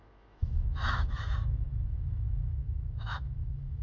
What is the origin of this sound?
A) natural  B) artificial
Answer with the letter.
B